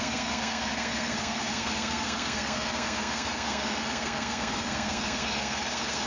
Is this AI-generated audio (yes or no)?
yes